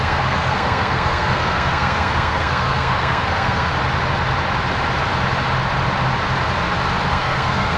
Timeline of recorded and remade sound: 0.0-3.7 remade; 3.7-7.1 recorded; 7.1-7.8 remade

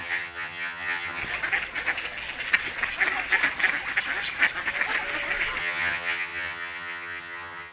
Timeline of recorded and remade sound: 0.0-1.2 remade; 1.2-5.6 recorded; 5.6-7.7 remade

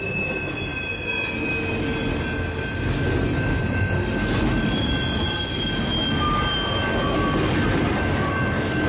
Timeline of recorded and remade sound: 0.0-8.9 recorded

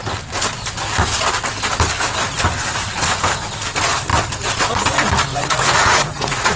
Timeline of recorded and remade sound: 0.0-5.3 recorded; 5.3-6.6 remade

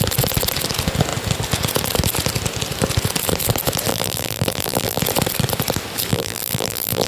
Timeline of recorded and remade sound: 0.0-3.9 recorded; 3.9-5.0 remade; 5.0-6.1 recorded; 6.1-7.1 remade